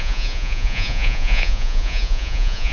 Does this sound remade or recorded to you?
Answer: remade